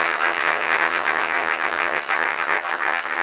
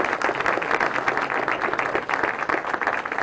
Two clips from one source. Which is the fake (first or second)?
first